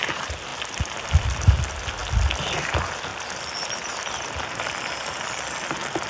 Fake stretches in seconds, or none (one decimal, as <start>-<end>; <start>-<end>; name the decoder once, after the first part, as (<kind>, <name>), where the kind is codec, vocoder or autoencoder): 0.5-1.6 (vocoder, BigVGAN v2); 2.0-2.7